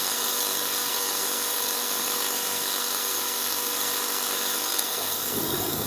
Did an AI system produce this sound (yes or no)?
yes